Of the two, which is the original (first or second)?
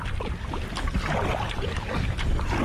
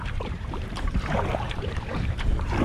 first